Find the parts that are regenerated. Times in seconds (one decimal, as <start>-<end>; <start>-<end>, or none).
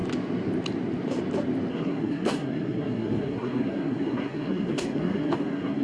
1.7-5.8